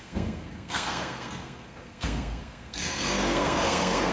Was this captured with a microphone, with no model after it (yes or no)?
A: no